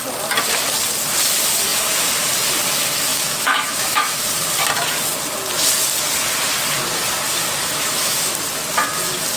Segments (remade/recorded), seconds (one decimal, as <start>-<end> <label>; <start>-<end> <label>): 0.0-3.1 recorded; 3.1-4.2 remade; 4.2-7.6 recorded; 7.6-8.4 remade; 8.4-9.4 recorded